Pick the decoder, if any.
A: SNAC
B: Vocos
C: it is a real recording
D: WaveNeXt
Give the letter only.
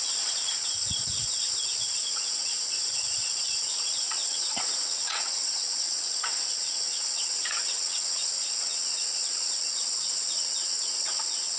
D